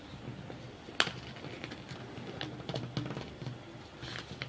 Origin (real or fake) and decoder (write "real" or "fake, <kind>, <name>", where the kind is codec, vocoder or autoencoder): real